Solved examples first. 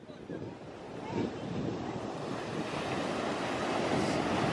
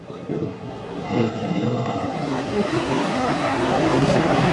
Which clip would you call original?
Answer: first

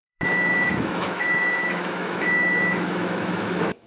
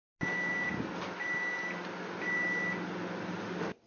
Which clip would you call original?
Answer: second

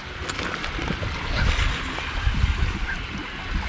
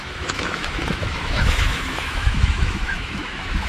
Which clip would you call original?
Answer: first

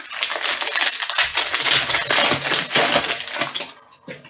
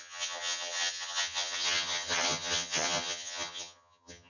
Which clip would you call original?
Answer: first